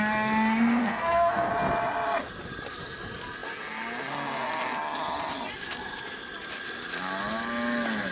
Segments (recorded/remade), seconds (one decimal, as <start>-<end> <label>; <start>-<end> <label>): 0.0-0.8 recorded; 0.8-1.5 remade; 1.5-8.1 recorded

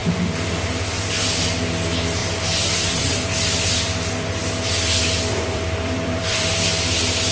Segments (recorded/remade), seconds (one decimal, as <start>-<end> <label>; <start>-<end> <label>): 0.0-2.2 recorded; 2.2-6.6 remade; 6.6-7.3 recorded